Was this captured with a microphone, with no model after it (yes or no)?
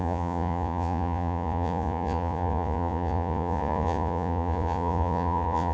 no